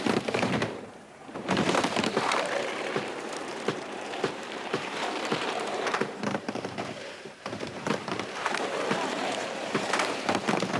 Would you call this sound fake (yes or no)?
yes